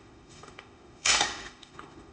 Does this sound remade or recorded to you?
remade